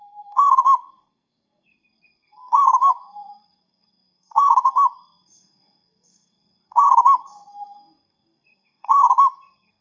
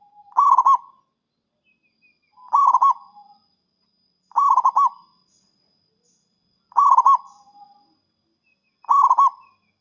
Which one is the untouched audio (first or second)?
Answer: second